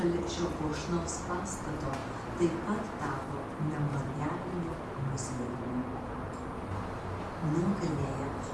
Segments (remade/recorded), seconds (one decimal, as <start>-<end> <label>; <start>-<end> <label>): 0.0-3.9 recorded; 3.9-8.5 remade